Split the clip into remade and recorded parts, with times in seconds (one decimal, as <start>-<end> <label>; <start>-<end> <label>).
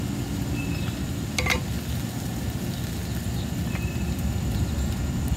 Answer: 0.0-5.4 recorded